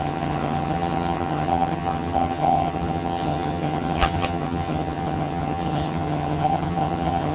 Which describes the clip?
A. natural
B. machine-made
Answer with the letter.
B